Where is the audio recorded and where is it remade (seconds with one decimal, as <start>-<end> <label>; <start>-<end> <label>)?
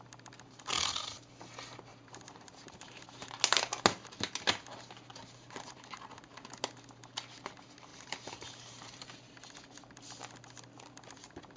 0.0-1.9 recorded; 1.9-3.4 remade; 3.4-5.1 recorded; 5.1-6.5 remade; 6.5-7.9 recorded; 7.9-9.1 remade; 9.1-11.6 recorded